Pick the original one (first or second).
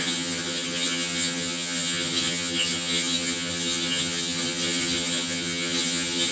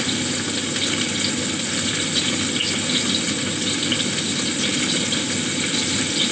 second